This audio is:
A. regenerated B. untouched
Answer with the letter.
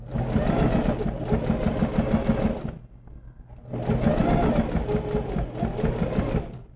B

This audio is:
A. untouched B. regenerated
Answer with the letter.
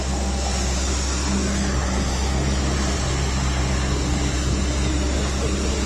A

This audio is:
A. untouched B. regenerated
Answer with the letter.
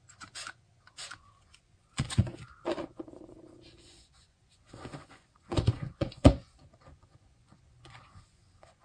B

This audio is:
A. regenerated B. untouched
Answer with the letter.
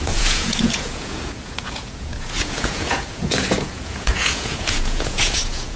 A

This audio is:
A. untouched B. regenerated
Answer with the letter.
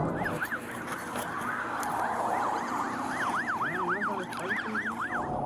A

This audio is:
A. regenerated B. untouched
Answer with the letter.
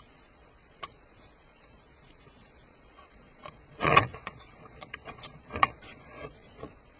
A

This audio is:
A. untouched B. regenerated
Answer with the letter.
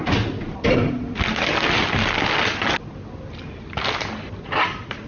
A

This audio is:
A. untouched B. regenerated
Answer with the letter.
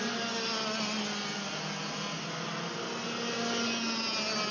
A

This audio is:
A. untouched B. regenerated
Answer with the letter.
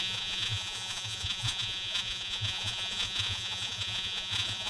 B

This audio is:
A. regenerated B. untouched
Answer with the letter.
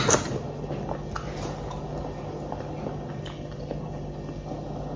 B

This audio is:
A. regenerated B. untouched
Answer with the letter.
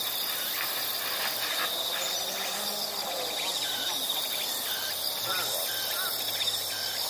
B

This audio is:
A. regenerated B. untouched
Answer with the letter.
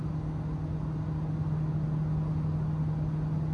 B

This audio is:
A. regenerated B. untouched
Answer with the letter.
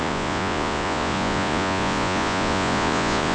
A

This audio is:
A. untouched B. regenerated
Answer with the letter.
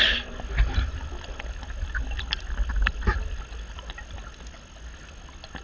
A